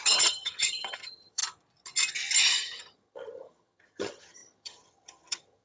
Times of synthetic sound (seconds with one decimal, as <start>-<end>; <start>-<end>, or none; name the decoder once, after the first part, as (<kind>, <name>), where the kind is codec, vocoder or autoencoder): 0.0-1.4 (vocoder, HiFi-GAN); 2.6-5.6